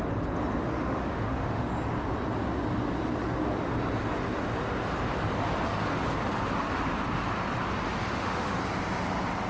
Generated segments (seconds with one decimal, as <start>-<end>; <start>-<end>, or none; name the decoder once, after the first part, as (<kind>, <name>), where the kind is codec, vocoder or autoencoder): 0.7-1.7 (autoencoder, DAC-VAE); 8.1-8.6